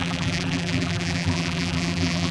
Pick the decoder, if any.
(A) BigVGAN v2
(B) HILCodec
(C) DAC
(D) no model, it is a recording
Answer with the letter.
A